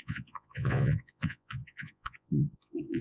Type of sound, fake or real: fake